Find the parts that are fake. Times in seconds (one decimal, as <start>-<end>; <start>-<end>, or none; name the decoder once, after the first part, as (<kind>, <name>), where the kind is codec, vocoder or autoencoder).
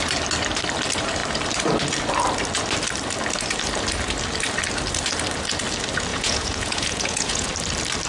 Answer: 6.1-7.5 (vocoder, Vocos)